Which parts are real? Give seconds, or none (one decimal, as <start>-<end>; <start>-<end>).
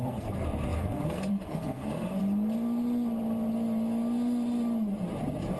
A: 2.2-5.6